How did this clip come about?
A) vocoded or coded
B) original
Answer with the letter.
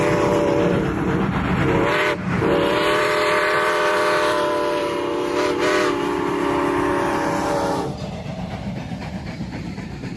A